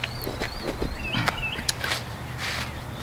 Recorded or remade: recorded